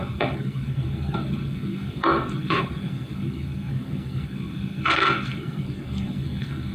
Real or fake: fake